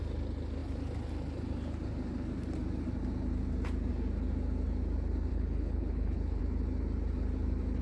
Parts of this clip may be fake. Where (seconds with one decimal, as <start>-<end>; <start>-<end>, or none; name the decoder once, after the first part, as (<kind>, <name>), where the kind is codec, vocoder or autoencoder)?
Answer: 5.3-6.4 (codec, HILCodec)